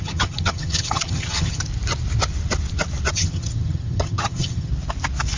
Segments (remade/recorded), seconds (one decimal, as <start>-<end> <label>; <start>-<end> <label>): 0.0-1.7 remade; 1.7-3.1 recorded; 3.1-4.7 remade; 4.7-5.4 recorded